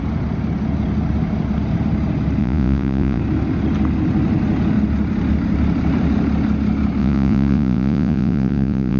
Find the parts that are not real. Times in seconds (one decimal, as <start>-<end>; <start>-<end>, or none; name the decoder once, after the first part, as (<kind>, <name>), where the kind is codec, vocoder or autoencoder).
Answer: 2.4-3.2 (vocoder, Vocos); 7.0-9.0